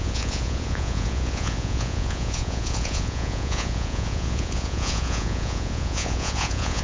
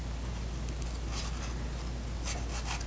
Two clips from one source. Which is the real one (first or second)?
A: second